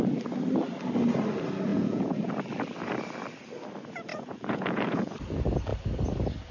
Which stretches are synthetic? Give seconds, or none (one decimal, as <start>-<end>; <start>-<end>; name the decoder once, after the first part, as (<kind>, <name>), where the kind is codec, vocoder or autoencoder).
1.7-2.3 (vocoder, Vocos); 4.1-5.1